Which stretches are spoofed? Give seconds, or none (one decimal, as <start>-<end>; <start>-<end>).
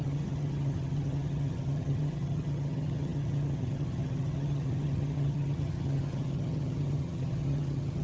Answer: 0.0-8.0